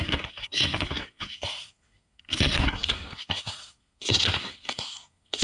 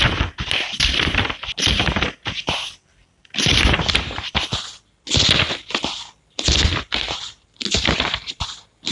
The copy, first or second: first